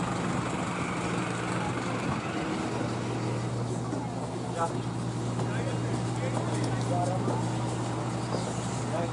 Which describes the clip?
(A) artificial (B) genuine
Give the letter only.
B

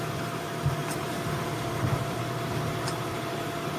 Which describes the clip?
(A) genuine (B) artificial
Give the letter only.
B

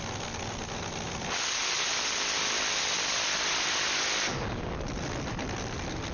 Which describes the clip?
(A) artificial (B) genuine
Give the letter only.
B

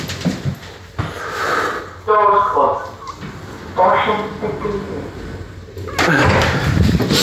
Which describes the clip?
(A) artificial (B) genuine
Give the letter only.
B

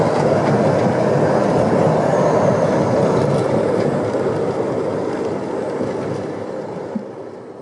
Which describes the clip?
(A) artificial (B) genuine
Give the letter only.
B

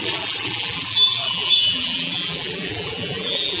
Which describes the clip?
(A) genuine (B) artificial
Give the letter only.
B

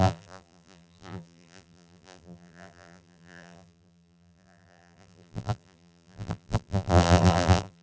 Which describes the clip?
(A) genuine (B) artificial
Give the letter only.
B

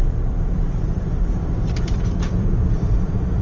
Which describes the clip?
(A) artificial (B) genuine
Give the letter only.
A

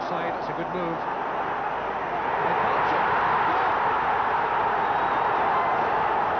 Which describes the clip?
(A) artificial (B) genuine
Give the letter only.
B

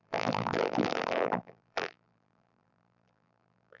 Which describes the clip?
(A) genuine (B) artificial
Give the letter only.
B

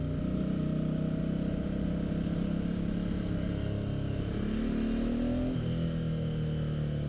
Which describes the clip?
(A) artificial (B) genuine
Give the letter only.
B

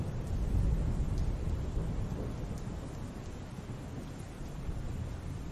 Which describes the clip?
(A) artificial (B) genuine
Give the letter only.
B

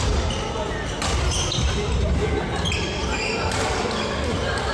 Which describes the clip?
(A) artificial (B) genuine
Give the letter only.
B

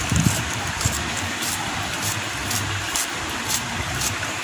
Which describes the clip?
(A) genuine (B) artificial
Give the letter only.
A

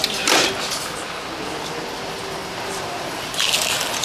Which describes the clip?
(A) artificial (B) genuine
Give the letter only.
B